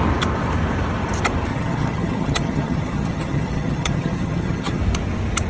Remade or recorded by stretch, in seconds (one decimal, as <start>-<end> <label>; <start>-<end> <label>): 0.0-1.5 recorded; 1.5-4.8 remade; 4.8-5.5 recorded